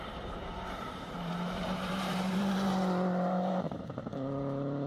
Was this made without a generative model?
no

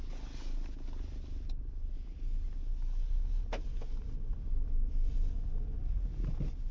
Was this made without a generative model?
yes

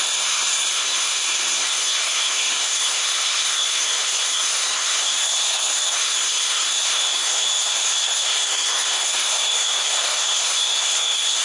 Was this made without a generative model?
no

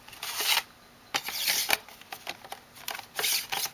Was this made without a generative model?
no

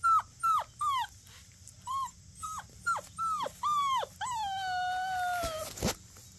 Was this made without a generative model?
yes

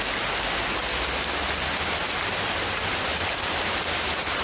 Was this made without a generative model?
yes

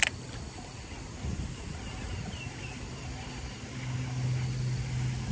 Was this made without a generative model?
yes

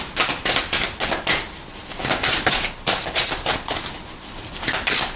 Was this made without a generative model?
yes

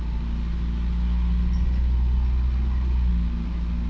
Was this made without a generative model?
yes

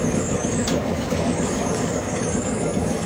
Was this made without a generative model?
no